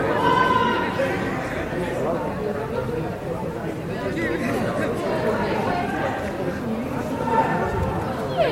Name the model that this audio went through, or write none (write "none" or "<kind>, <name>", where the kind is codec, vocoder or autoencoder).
none